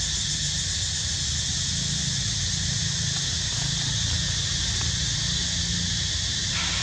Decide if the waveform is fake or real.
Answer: real